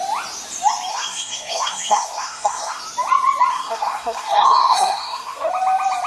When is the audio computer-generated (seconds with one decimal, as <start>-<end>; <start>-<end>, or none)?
0.9-2.8; 3.5-5.5